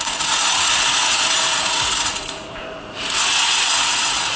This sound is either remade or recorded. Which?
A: remade